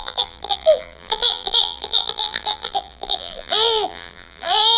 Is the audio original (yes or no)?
no